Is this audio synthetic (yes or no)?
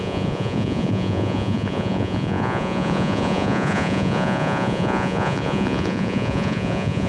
yes